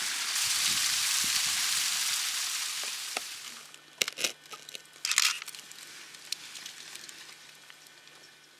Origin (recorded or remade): recorded